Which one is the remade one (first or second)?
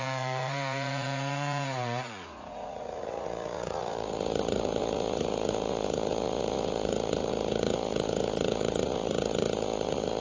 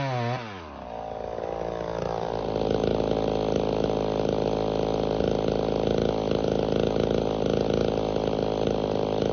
first